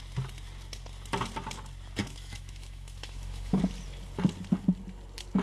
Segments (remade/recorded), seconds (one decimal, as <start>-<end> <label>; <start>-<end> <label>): 0.0-2.0 recorded; 2.0-3.6 remade; 3.6-5.4 recorded